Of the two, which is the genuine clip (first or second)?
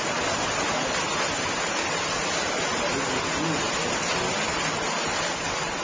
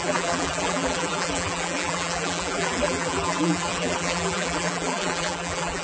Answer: first